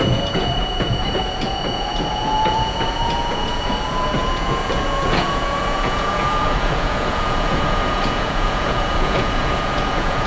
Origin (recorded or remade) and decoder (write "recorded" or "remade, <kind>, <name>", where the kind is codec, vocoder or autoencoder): remade, vocoder, Vocos